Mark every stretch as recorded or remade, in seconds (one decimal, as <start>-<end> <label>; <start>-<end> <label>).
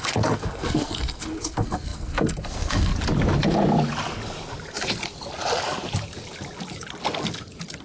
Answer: 0.0-2.9 remade; 2.9-7.8 recorded